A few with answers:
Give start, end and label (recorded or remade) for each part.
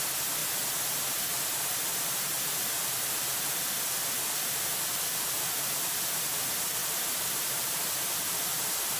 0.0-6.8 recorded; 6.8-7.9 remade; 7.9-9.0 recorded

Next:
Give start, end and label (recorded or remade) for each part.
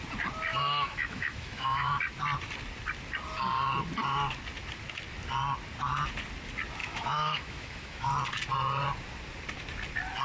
0.0-0.5 recorded; 0.5-2.0 remade; 2.0-6.8 recorded; 6.8-8.1 remade; 8.1-10.2 recorded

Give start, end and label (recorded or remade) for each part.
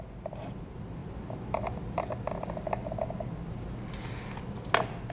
0.0-5.1 recorded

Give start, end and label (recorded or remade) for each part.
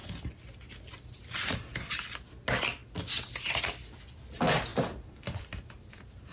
0.0-4.7 recorded; 4.7-5.4 remade; 5.4-6.3 recorded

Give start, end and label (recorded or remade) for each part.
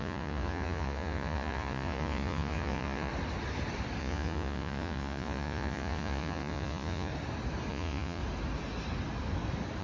0.0-3.1 remade; 3.1-4.0 recorded; 4.0-7.1 remade; 7.1-7.7 recorded; 7.7-8.2 remade; 8.2-9.8 recorded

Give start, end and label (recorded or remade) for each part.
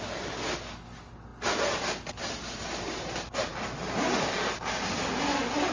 0.0-5.7 recorded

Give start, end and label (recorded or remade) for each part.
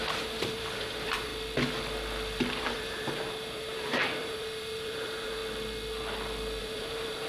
0.0-1.3 remade; 1.3-2.5 recorded; 2.5-5.4 remade; 5.4-6.6 recorded; 6.6-7.3 remade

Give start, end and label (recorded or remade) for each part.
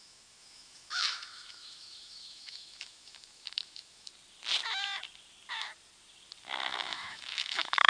0.0-4.1 remade; 4.1-6.7 recorded; 6.7-7.9 remade